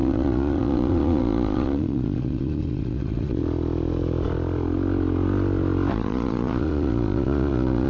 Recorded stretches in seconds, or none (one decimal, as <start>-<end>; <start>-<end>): 3.4-5.9